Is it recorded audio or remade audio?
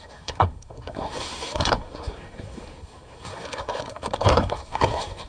remade